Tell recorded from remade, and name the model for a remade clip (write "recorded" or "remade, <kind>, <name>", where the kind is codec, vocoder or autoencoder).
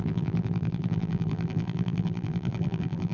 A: remade, vocoder, BigVGAN v2